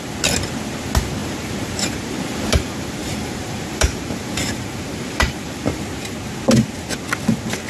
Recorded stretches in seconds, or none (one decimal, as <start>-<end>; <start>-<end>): 0.0-1.2; 5.8-7.7